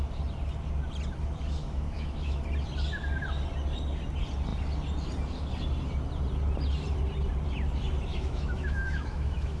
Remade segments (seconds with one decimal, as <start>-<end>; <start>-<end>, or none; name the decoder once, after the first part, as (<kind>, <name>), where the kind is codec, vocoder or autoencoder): 1.6-2.4 (autoencoder, DAC-VAE); 8.1-9.6